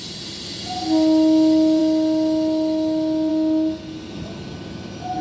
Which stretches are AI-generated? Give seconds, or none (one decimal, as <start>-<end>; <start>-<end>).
none